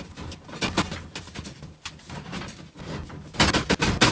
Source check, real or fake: real